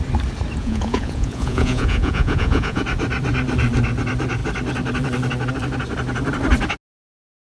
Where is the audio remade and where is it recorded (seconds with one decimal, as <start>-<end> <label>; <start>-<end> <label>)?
0.0-0.6 recorded; 0.6-2.8 remade; 2.8-7.5 recorded